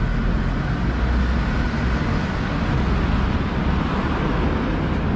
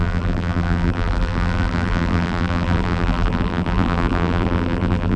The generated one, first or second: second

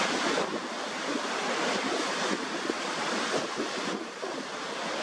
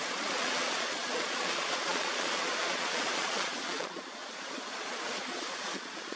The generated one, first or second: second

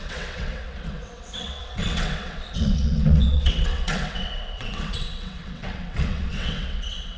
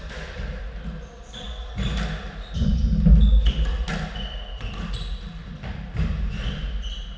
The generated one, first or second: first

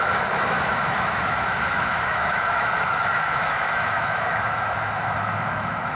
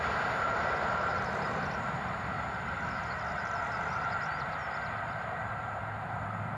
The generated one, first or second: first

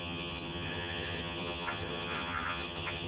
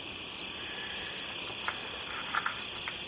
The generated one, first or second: first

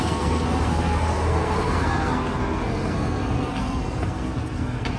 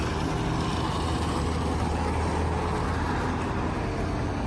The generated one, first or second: first